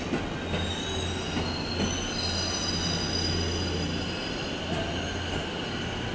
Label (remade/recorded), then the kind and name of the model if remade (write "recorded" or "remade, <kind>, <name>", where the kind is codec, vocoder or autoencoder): recorded